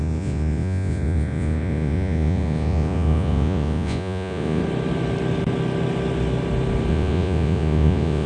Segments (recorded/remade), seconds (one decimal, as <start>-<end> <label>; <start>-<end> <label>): 0.0-4.6 remade; 4.6-6.9 recorded; 6.9-8.3 remade